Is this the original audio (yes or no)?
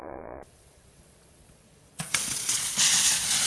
no